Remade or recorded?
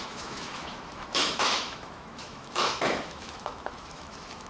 remade